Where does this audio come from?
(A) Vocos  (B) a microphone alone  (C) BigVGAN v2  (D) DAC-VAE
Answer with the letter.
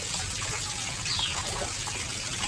B